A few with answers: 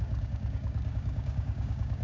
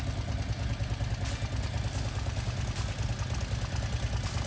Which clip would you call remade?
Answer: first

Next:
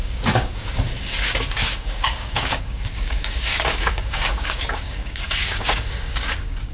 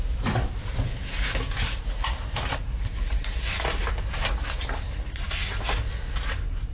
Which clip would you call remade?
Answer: first